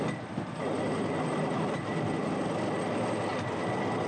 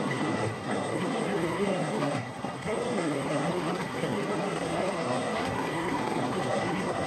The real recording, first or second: first